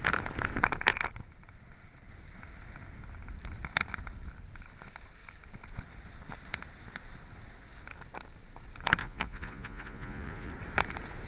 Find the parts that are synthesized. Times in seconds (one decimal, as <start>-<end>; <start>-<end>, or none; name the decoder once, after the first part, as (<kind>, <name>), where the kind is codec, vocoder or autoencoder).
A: 9.0-10.5 (vocoder, Vocos)